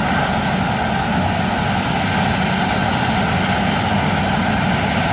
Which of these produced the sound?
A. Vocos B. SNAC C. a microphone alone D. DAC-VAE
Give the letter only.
C